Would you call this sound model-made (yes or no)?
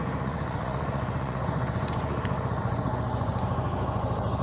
yes